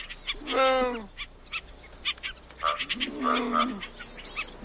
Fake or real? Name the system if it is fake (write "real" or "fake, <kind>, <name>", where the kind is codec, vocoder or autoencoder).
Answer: real